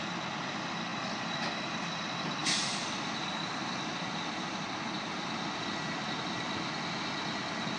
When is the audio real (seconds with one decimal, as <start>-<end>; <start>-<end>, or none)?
0.0-0.9; 1.6-2.4; 3.9-7.8